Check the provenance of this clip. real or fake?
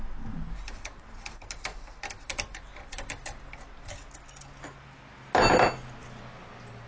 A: real